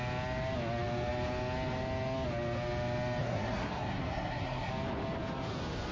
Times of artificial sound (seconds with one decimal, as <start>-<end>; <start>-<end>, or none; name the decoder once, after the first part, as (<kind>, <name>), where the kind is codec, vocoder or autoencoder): 3.2-4.7 (codec, SNAC)